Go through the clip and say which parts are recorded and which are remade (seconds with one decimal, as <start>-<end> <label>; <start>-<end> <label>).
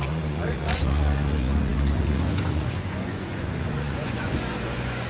0.0-5.1 remade